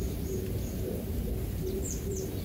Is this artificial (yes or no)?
yes